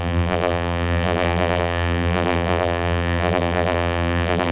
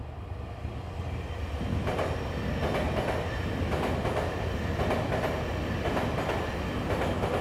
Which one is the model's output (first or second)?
first